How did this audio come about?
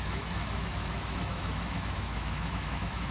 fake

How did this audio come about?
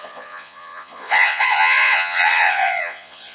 fake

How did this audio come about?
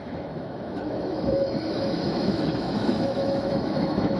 fake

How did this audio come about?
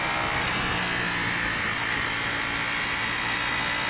real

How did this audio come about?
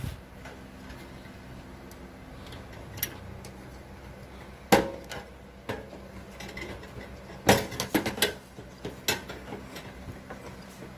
real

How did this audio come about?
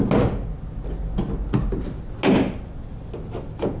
real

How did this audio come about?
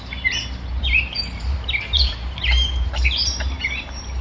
fake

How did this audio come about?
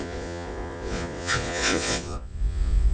fake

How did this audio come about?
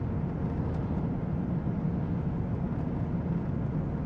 real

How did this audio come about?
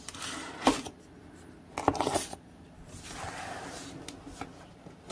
real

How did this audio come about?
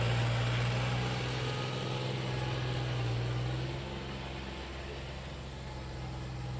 real